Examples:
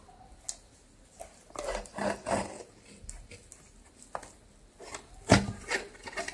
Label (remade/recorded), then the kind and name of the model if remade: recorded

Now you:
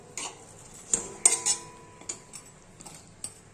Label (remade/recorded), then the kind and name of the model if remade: recorded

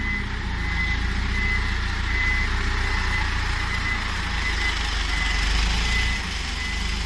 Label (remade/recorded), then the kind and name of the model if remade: recorded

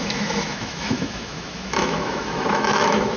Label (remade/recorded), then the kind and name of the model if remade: remade, autoencoder, DAC-VAE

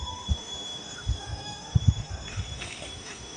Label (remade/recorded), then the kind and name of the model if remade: remade, autoencoder, DAC-VAE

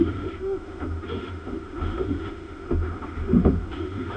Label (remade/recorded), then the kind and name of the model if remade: remade, autoencoder, DAC-VAE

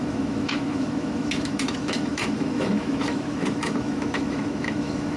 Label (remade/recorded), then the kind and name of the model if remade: remade, autoencoder, DAC-VAE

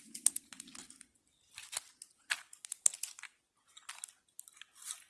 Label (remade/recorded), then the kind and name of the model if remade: recorded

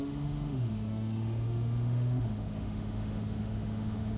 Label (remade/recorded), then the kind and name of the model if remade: remade, autoencoder, DAC-VAE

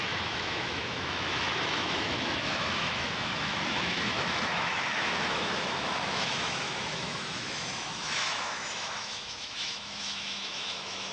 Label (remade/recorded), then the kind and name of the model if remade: remade, autoencoder, DAC-VAE